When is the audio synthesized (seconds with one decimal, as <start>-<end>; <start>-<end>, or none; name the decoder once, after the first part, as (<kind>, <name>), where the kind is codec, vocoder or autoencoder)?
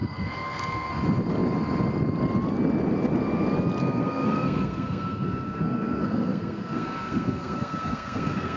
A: 0.0-0.9 (codec, SNAC); 3.8-8.6